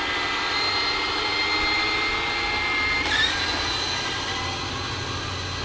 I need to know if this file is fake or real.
real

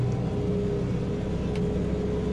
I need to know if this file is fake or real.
real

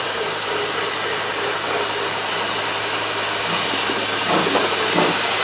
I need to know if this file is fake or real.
real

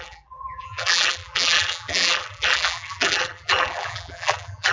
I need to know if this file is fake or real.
fake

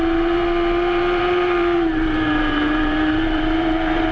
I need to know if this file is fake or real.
fake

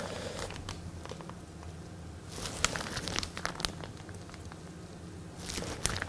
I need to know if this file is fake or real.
real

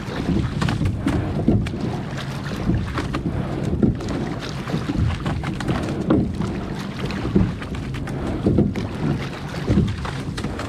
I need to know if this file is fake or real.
real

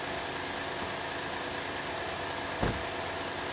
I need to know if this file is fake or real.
real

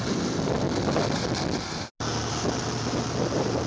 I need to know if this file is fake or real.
real